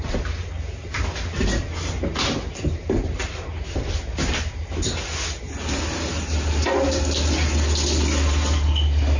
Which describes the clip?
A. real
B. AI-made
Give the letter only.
A